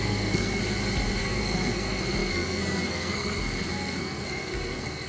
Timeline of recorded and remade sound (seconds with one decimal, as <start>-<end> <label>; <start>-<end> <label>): 0.0-0.6 remade; 0.6-1.2 recorded; 1.2-5.1 remade